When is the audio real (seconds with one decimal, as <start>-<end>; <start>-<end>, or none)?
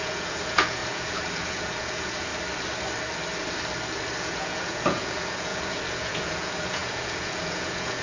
2.3-4.2